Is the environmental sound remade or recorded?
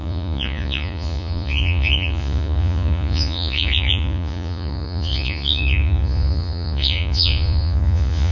remade